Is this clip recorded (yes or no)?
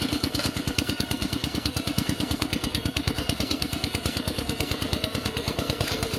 no